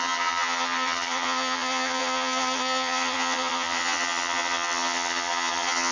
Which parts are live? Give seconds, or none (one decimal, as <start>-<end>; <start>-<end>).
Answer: none